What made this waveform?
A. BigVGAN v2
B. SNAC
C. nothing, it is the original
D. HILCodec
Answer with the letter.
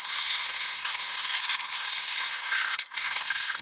B